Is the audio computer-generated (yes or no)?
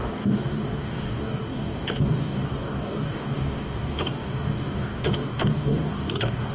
yes